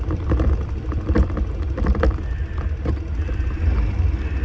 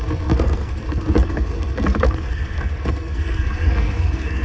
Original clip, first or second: first